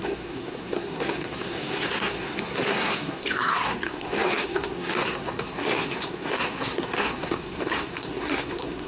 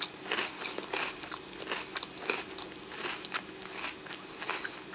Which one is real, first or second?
second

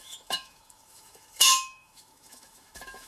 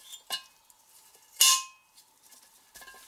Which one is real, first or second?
second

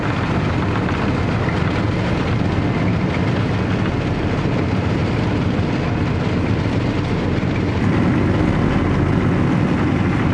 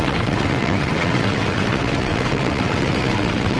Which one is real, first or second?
first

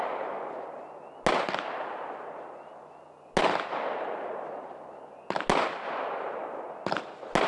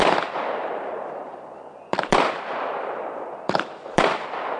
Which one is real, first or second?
first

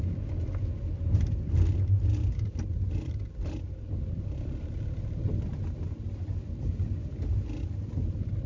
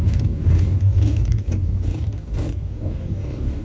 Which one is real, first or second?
first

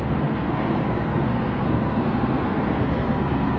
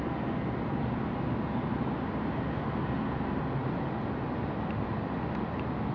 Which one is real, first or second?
second